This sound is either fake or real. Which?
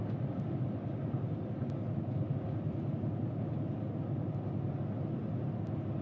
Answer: real